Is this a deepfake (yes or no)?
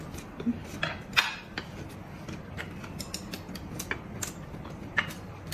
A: no